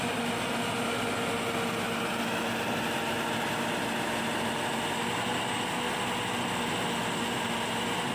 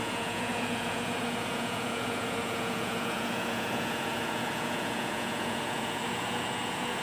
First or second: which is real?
first